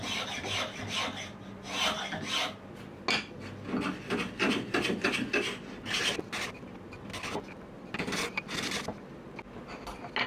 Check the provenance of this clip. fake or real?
real